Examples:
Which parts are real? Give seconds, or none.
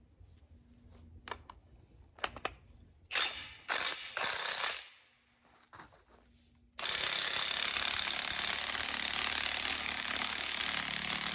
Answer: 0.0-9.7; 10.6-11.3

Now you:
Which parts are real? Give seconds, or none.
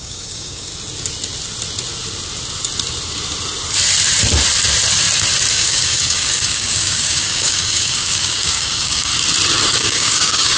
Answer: 0.7-5.5; 9.1-9.8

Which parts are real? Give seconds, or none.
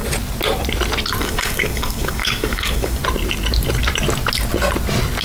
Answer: 0.0-1.2; 3.0-5.2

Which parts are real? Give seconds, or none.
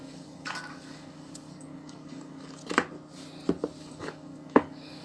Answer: 2.6-3.8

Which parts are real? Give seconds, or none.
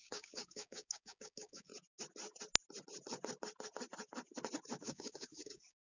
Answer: 1.7-4.8